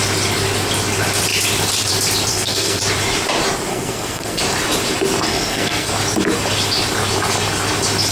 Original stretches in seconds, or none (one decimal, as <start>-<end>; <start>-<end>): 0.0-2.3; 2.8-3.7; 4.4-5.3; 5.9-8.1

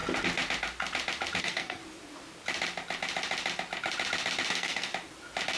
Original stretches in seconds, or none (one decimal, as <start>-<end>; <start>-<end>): 0.0-1.4; 1.8-4.5; 4.9-5.6

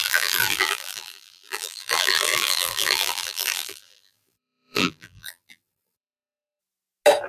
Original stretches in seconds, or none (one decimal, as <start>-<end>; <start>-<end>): 6.6-7.3